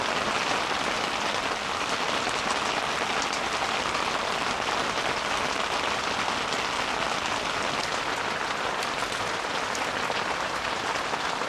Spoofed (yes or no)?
no